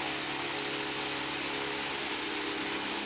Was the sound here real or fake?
real